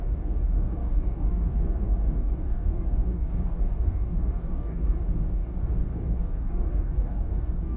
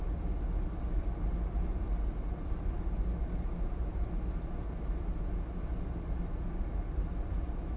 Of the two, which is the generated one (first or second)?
first